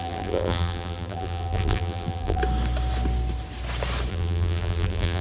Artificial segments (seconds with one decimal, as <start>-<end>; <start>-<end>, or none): 0.0-2.4; 4.1-5.2